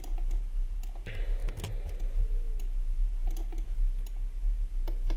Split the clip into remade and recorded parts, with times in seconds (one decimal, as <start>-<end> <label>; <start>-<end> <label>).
0.0-5.2 recorded